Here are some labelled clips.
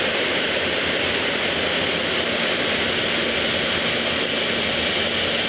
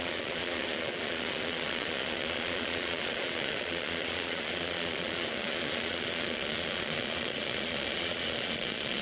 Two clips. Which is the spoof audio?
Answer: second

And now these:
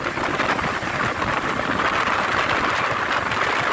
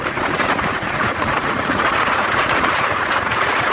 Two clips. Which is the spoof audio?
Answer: second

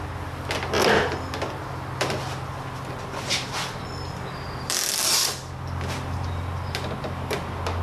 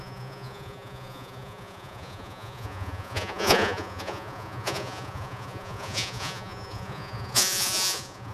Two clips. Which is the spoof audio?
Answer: second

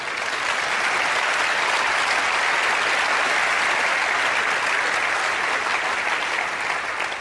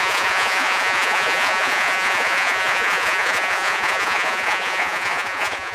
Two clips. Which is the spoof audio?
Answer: second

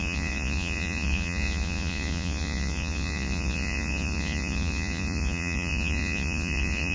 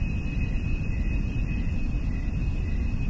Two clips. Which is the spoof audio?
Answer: first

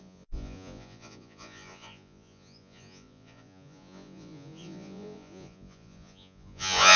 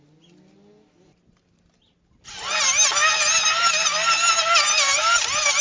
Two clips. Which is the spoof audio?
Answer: first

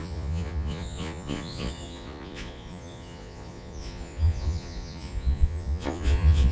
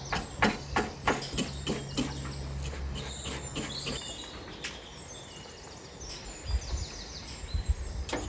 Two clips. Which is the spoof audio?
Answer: first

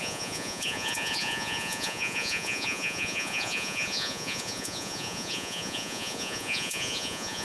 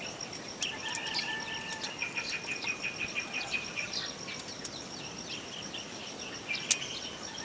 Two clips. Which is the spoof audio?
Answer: first